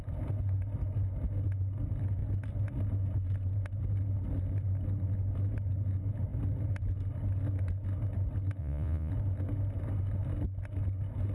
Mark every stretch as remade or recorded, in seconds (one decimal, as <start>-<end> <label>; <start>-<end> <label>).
0.0-8.6 recorded; 8.6-9.1 remade; 9.1-11.3 recorded